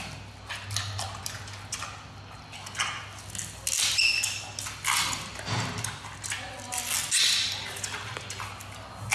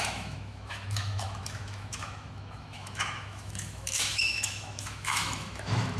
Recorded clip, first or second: first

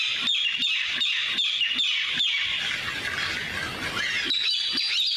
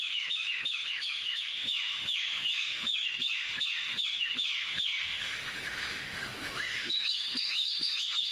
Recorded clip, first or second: first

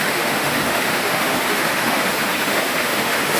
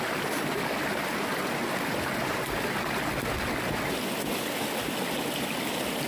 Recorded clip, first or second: second